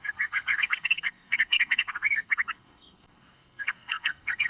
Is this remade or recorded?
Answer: remade